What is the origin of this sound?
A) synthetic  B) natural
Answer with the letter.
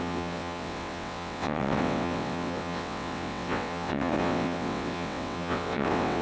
A